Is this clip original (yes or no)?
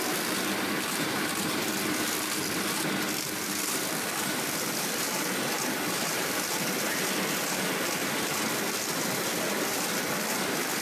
yes